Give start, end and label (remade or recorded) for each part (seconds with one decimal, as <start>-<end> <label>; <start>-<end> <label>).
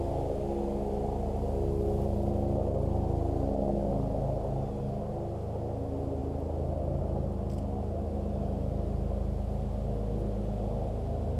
0.0-11.4 recorded